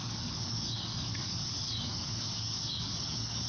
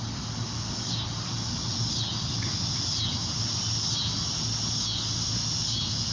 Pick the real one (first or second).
second